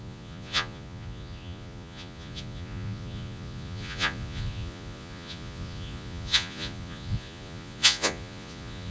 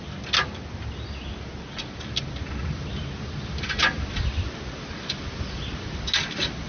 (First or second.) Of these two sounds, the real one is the second